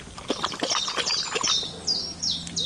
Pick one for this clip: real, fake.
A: real